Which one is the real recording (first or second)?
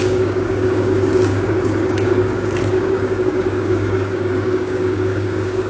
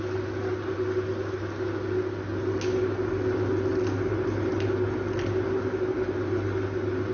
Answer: second